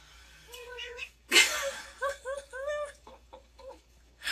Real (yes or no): no